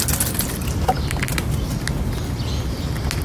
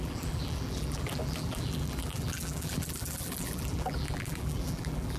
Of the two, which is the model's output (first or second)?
second